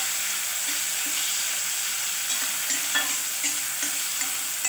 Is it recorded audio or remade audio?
recorded